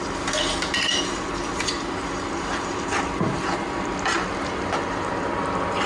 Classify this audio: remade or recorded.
remade